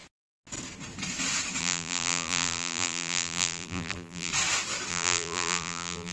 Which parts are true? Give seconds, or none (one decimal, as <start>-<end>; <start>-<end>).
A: 0.0-1.6; 4.3-4.9